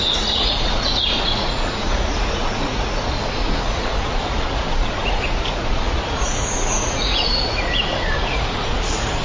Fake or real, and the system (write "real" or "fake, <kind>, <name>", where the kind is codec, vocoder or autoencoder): fake, vocoder, Vocos